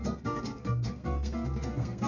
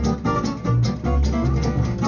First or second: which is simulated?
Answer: first